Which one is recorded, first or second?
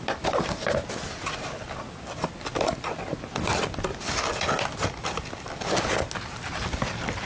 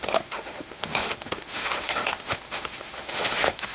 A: first